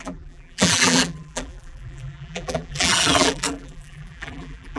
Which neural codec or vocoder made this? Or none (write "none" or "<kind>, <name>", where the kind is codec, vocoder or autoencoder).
vocoder, BigVGAN v2